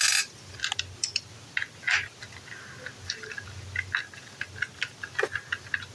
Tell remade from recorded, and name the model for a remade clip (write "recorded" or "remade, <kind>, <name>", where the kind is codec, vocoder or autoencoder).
recorded